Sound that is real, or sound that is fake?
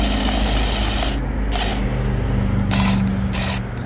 real